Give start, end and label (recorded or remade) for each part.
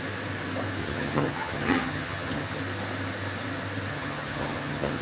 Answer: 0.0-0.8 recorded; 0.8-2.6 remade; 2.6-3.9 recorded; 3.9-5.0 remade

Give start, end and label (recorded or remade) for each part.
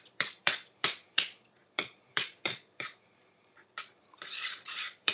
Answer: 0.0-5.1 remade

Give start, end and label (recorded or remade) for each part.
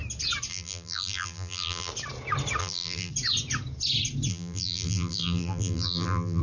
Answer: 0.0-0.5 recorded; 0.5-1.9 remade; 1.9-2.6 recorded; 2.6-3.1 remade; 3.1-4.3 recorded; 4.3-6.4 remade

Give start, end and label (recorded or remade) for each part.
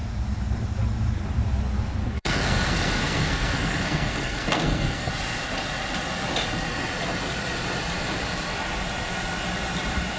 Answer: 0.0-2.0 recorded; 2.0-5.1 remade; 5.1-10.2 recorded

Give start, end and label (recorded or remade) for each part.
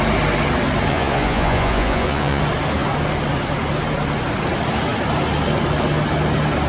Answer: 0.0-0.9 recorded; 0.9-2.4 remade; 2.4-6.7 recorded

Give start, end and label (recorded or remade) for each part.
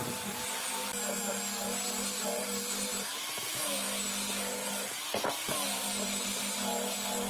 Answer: 0.0-7.3 recorded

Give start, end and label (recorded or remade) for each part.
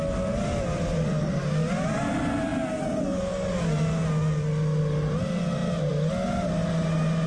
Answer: 0.0-7.3 recorded